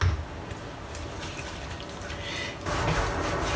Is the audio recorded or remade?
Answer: recorded